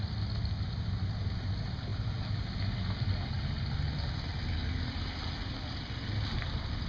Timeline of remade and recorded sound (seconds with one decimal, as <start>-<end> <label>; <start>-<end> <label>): 0.0-6.9 recorded